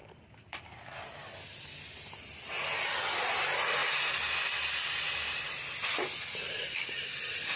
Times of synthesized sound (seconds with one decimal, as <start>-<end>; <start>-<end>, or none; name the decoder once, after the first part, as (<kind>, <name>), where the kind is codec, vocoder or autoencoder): none